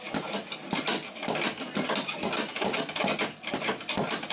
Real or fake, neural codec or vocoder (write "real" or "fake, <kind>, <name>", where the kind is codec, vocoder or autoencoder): real